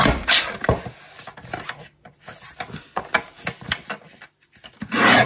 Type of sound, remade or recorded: recorded